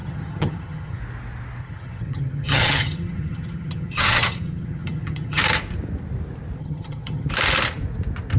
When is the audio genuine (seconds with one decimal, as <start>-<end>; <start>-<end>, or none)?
1.0-1.6; 5.4-6.6; 7.3-8.4